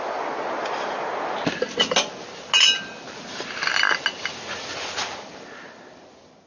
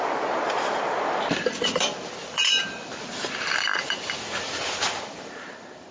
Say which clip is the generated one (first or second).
second